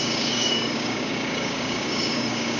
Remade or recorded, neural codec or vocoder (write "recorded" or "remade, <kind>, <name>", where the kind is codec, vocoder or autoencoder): remade, codec, DAC